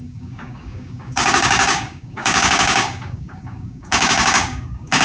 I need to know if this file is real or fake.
fake